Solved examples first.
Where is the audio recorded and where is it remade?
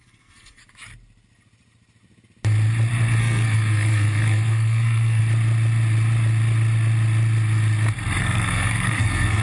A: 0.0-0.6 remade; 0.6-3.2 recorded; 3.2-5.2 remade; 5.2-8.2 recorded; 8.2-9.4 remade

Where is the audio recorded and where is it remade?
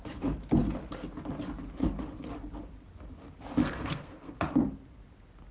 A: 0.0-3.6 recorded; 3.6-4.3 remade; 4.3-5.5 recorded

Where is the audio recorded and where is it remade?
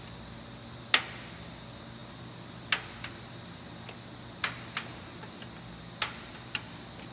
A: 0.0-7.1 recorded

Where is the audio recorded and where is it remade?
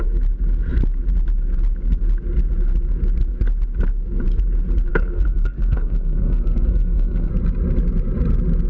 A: 0.0-4.9 recorded; 4.9-7.3 remade; 7.3-8.7 recorded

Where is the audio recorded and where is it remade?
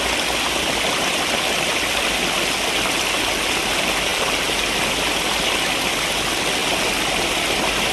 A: 0.0-7.9 recorded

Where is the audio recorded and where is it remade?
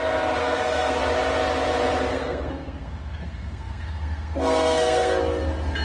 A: 0.0-0.4 recorded; 0.4-1.0 remade; 1.0-2.1 recorded; 2.1-5.2 remade; 5.2-5.8 recorded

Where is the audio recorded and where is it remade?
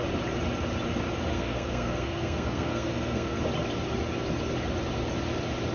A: 0.0-1.3 recorded; 1.3-3.4 remade; 3.4-5.7 recorded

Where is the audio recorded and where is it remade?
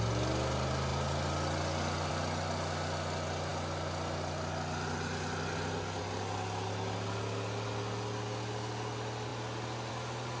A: 0.0-10.4 recorded